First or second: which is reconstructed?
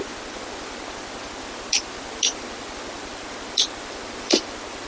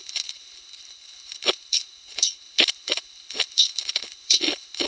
second